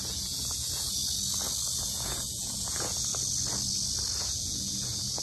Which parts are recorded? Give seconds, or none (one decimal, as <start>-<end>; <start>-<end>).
1.0-1.8; 3.1-4.2